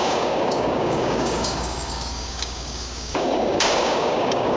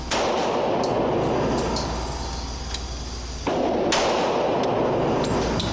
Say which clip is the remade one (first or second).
first